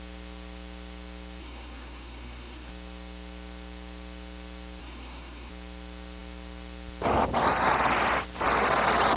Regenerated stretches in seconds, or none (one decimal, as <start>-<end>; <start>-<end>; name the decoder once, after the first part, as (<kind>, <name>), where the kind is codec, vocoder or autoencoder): 1.4-2.7 (codec, SNAC); 4.8-5.5